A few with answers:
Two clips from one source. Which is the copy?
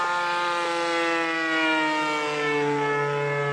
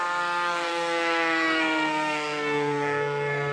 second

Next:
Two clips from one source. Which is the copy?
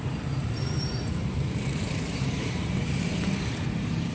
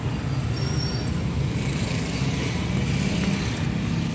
first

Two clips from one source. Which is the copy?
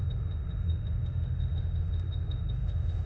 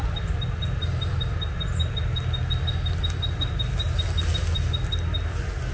first